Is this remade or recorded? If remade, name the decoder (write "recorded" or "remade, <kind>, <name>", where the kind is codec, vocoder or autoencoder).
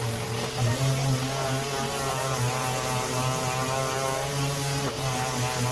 recorded